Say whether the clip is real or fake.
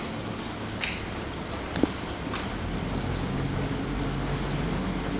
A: real